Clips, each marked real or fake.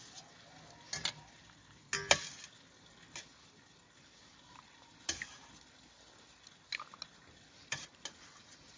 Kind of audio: real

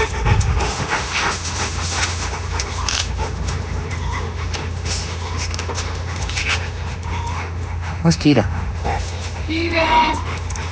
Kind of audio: fake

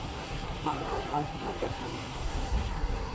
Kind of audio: fake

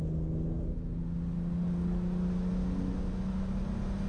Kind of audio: real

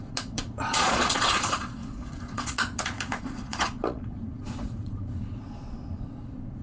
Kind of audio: fake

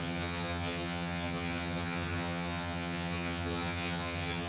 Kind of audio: fake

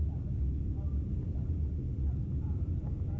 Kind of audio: real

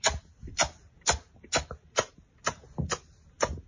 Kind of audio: real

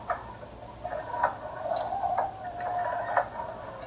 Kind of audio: real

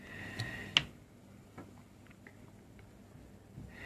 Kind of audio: real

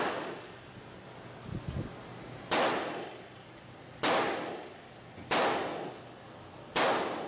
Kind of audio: real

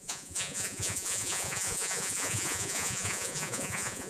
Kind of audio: fake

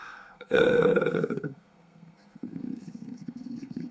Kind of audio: fake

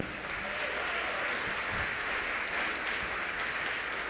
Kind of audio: real